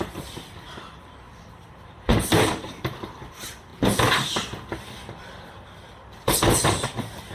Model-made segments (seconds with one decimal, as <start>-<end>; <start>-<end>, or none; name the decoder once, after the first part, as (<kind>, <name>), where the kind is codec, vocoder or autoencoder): 0.0-3.7 (vocoder, BigVGAN v2); 5.0-7.3